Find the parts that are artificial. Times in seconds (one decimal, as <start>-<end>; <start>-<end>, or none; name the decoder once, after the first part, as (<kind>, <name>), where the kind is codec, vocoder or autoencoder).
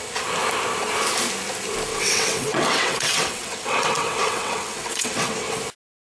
1.9-5.6 (vocoder, WaveNeXt)